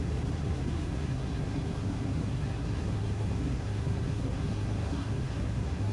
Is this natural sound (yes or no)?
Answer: no